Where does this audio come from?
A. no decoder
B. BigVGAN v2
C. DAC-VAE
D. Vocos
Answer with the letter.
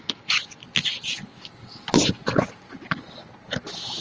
A